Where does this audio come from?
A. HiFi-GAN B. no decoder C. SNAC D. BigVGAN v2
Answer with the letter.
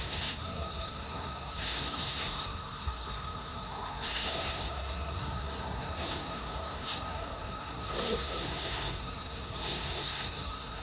C